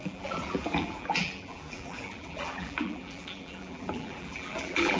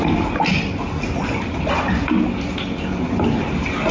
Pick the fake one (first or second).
first